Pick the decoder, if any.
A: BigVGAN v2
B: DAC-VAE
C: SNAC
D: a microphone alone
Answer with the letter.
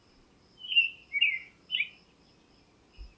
D